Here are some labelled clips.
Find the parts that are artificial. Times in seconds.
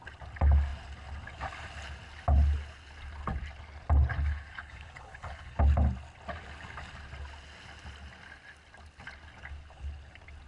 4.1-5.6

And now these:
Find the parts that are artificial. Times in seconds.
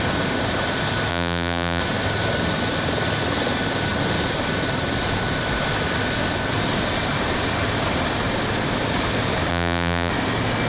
1.1-1.8; 9.5-10.1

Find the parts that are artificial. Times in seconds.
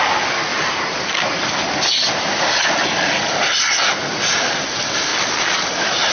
0.5-1.1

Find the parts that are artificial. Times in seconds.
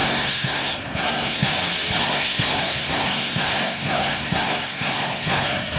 0.0-1.5; 2.0-5.8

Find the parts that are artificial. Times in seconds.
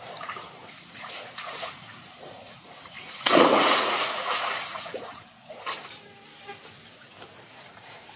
0.6-5.3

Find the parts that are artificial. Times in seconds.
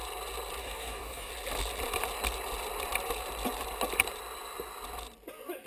0.6-1.3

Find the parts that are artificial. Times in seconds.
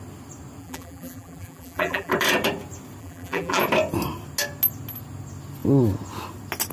0.6-2.1; 3.0-3.6